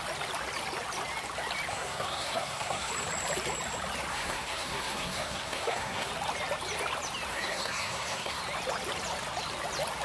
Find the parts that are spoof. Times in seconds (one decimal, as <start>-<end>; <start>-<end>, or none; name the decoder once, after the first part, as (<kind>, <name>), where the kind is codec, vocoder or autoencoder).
1.7-2.9 (codec, SNAC); 4.1-6.1; 7.3-8.4